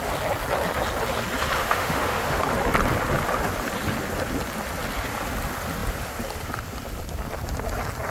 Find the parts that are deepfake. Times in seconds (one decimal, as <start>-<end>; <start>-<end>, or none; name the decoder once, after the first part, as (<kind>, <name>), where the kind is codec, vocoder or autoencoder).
1.6-2.4 (autoencoder, DAC-VAE)